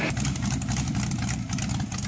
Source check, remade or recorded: recorded